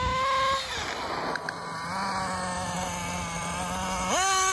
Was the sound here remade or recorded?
recorded